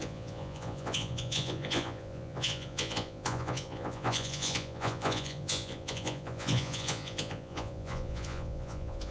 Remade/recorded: remade